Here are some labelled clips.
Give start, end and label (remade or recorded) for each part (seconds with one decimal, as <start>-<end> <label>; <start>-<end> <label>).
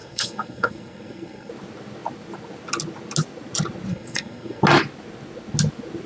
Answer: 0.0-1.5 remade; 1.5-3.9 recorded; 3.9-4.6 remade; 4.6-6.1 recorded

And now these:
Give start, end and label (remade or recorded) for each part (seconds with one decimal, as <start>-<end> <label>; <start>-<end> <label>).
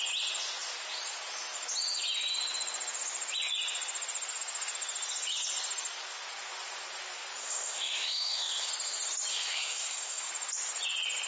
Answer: 0.0-7.4 recorded; 7.4-8.7 remade; 8.7-9.3 recorded; 9.3-10.3 remade; 10.3-11.3 recorded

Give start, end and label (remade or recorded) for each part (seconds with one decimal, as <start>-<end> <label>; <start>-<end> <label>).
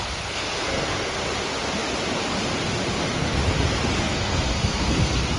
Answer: 0.0-1.2 remade; 1.2-3.0 recorded; 3.0-3.4 remade; 3.4-4.0 recorded; 4.0-5.4 remade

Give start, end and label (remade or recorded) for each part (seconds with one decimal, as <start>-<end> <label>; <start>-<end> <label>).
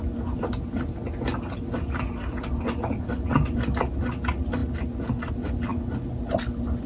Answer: 0.0-6.9 recorded